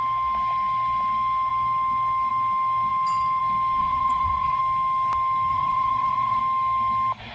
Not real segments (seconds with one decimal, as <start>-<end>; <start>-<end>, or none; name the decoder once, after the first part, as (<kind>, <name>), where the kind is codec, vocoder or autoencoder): 3.8-4.6 (vocoder, WaveNeXt); 5.5-6.4